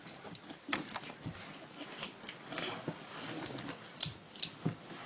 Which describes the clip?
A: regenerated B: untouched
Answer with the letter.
B